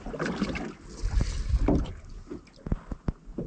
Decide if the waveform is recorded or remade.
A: recorded